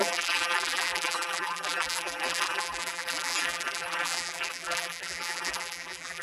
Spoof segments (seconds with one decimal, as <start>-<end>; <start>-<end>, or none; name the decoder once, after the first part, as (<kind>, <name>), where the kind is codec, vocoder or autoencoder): 0.0-6.2 (vocoder, BigVGAN v2)